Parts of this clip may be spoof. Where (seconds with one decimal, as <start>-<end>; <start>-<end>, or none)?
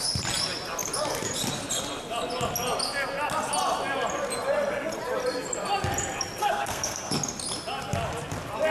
6.4-7.1